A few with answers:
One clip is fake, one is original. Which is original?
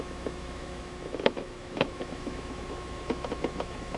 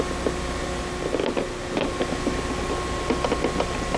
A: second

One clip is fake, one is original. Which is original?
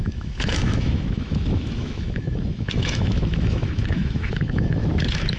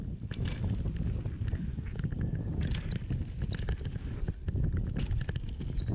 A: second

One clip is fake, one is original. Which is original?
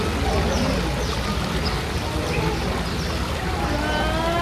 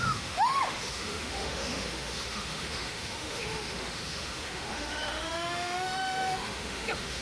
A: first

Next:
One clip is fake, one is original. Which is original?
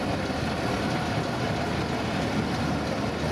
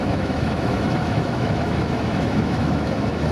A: first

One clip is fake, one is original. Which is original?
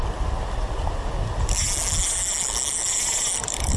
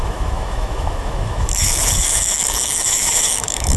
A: first